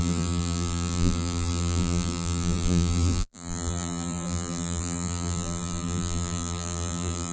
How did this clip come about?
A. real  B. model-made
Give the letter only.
B